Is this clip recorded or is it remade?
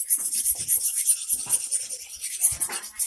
recorded